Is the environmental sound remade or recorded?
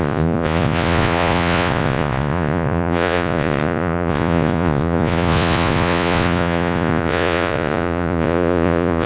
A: remade